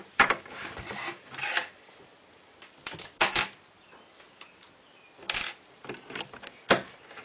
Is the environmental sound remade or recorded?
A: recorded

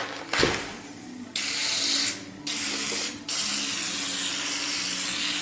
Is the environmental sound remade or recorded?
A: recorded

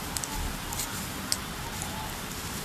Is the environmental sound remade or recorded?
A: recorded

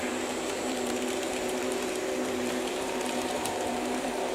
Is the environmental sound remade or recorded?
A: remade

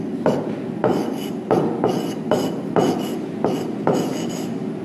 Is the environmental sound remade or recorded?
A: recorded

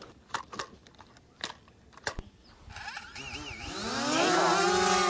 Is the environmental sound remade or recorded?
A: recorded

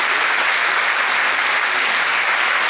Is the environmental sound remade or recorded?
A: recorded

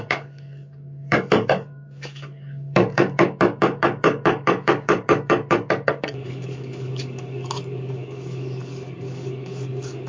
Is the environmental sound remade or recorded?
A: remade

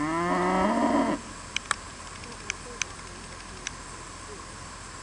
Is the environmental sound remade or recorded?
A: recorded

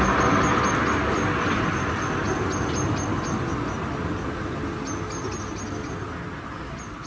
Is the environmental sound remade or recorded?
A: recorded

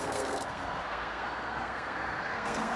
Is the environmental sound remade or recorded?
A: remade